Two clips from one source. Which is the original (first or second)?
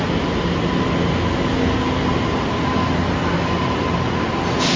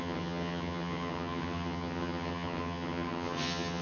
first